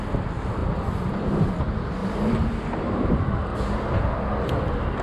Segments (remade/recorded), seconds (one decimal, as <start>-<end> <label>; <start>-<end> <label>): 0.0-0.6 recorded; 0.6-1.5 remade; 1.5-2.0 recorded; 2.0-2.6 remade; 2.6-3.5 recorded; 3.5-4.1 remade; 4.1-5.0 recorded